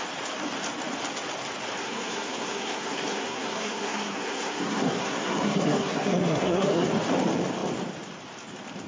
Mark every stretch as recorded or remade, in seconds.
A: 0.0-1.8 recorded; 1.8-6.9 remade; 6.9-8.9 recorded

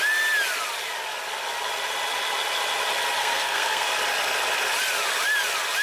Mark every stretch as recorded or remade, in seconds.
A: 0.0-3.2 recorded; 3.2-3.9 remade; 3.9-5.8 recorded

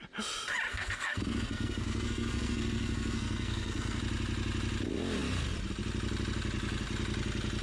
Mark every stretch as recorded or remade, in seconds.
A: 0.0-0.7 recorded; 0.7-4.0 remade; 4.0-7.6 recorded

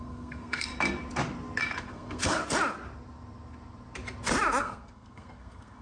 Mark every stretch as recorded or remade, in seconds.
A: 0.0-0.7 remade; 0.7-1.8 recorded; 1.8-2.4 remade; 2.4-4.6 recorded; 4.6-5.8 remade